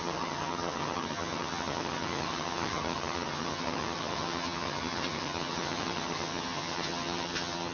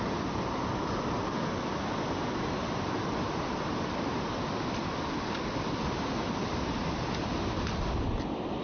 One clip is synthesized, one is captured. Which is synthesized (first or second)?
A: first